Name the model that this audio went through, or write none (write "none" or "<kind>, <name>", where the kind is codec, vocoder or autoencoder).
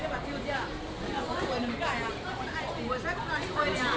none